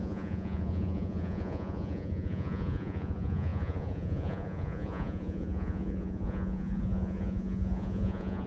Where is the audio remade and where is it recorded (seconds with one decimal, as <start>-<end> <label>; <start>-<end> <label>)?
0.0-8.5 remade